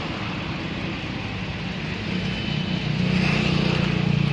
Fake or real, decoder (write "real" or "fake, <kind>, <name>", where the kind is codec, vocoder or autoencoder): real